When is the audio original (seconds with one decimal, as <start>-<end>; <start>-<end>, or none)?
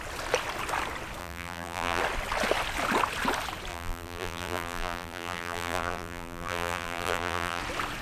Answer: 0.0-1.2; 2.0-3.7; 7.6-8.0